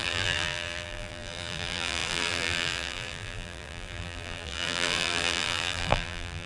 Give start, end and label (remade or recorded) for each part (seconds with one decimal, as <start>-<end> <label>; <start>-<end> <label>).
0.0-6.5 remade